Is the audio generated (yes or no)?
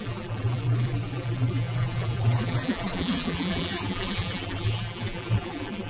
yes